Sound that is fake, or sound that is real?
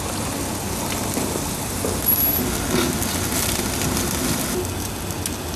real